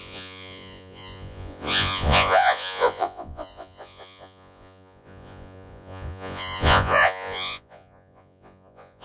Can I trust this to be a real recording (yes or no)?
no